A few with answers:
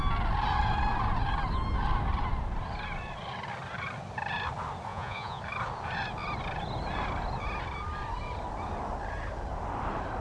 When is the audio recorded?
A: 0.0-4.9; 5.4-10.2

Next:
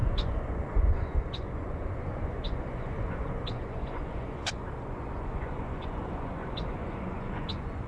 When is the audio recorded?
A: none

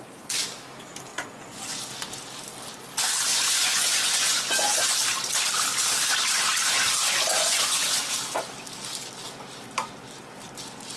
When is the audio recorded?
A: 0.0-1.1; 1.9-3.3; 4.8-7.3; 8.0-11.0

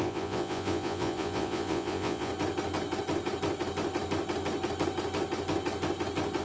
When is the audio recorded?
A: 2.3-6.4

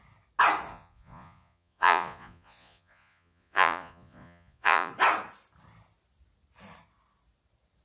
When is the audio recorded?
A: 0.0-0.7; 4.9-7.8

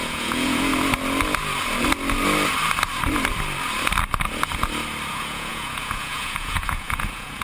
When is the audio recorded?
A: 0.7-5.1

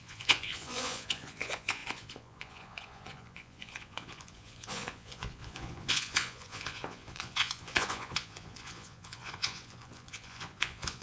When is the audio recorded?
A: none